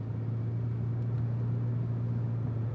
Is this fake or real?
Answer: real